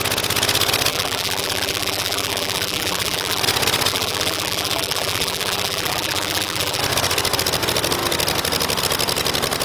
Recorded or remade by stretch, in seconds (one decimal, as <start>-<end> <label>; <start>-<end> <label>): 0.0-0.9 recorded; 0.9-3.4 remade; 3.4-3.9 recorded; 3.9-6.8 remade; 6.8-9.6 recorded